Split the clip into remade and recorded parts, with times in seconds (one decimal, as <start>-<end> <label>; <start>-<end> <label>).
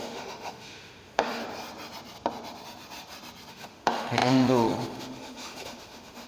0.0-1.4 remade; 1.4-3.5 recorded; 3.5-6.3 remade